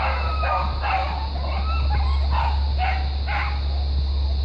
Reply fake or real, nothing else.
real